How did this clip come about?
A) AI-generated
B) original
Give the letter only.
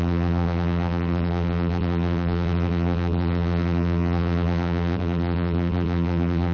A